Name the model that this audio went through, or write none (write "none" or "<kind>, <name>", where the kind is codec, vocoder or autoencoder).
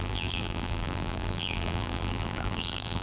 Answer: vocoder, BigVGAN v2